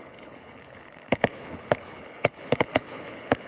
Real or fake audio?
fake